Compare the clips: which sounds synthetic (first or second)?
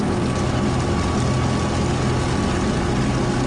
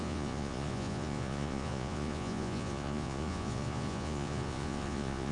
second